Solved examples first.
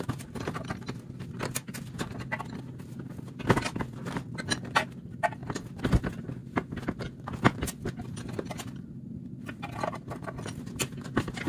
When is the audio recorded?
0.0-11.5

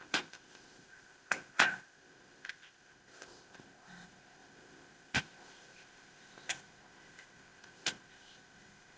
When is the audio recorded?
none

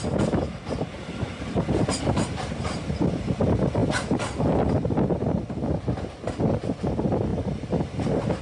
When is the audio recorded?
0.0-8.4

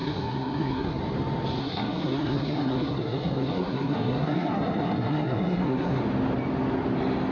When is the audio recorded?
1.0-1.6; 6.0-7.3